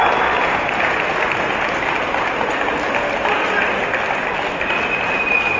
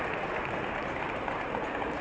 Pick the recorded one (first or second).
first